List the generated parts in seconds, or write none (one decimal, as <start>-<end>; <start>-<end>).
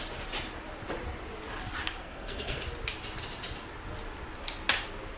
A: 2.0-2.6